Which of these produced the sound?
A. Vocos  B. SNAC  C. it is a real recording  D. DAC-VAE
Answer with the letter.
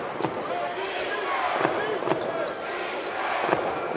C